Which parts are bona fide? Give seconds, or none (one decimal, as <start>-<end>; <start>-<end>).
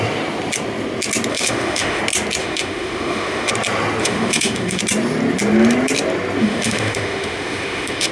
0.0-1.3; 2.0-2.4; 3.5-4.0; 4.8-6.4